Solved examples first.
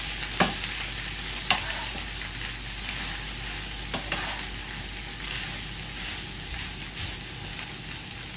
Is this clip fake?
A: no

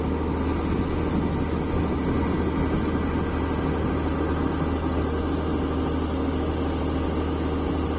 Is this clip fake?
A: no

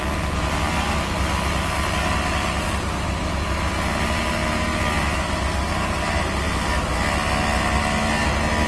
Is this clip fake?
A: no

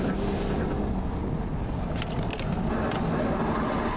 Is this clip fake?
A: no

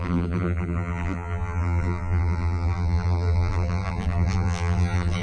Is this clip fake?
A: yes